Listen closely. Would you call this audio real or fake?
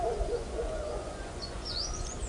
fake